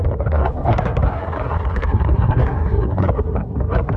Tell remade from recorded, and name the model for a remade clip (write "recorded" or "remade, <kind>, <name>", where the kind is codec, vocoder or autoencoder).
remade, codec, SNAC